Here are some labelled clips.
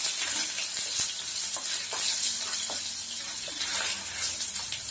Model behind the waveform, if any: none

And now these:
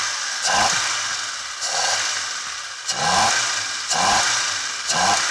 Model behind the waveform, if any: none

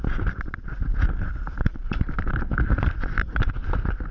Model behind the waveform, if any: none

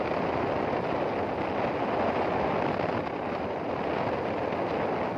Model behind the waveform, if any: none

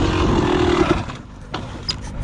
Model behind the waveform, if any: none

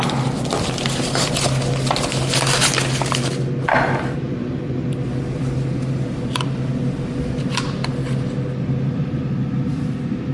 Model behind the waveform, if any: none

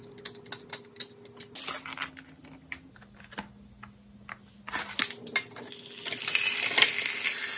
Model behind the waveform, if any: none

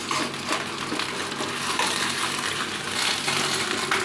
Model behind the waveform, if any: none